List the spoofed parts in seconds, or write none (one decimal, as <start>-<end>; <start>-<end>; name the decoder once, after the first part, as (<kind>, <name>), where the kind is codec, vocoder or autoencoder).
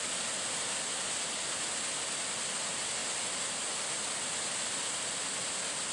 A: none